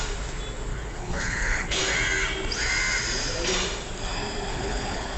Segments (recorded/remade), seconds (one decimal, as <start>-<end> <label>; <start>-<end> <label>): 0.0-0.7 recorded; 0.7-1.8 remade; 1.8-4.5 recorded; 4.5-5.2 remade